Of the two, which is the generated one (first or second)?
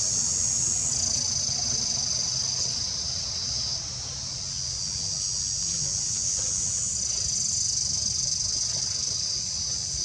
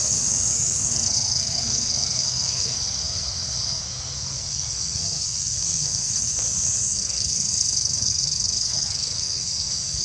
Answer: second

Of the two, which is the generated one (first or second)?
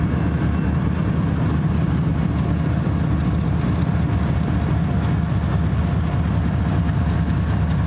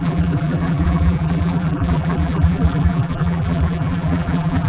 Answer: second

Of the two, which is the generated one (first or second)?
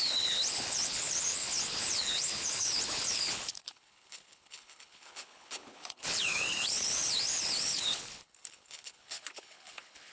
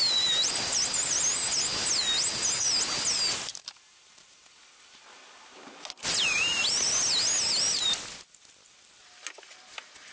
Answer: first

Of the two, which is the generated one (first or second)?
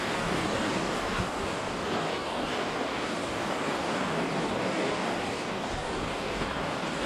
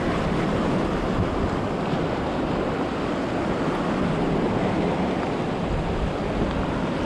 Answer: first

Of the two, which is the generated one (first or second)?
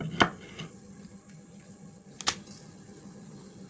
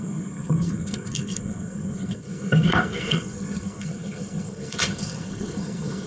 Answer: second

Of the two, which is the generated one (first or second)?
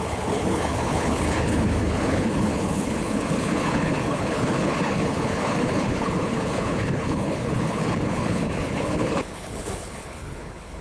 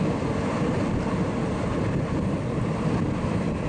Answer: first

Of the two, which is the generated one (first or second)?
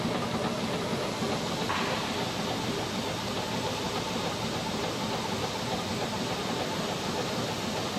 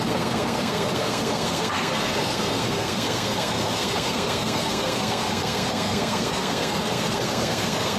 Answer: second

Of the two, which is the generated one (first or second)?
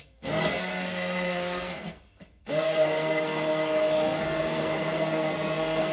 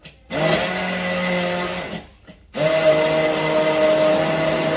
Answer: first